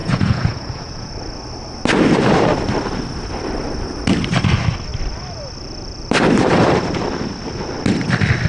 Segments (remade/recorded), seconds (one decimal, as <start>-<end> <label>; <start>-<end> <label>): 0.0-1.1 remade; 1.1-8.5 recorded